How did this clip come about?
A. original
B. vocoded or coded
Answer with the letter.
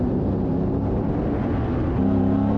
A